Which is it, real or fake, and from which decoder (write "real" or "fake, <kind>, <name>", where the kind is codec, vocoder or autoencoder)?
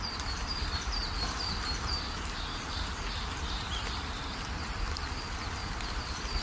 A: fake, vocoder, BigVGAN v2